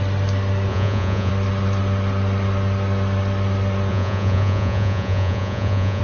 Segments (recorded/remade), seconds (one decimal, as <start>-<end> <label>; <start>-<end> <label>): 0.0-0.7 recorded; 0.7-1.3 remade; 1.3-3.9 recorded; 3.9-6.0 remade